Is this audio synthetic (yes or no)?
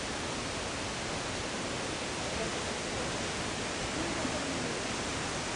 no